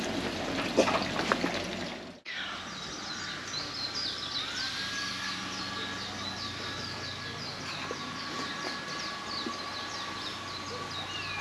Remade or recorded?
recorded